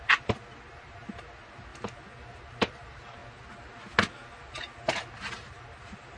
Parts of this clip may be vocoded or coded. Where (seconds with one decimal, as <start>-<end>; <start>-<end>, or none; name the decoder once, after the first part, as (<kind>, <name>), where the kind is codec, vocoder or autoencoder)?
0.0-1.7 (vocoder, BigVGAN v2); 2.5-3.2; 5.1-6.2